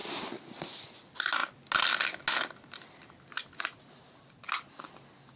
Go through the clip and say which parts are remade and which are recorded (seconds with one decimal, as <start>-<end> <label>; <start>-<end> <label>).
0.0-5.4 recorded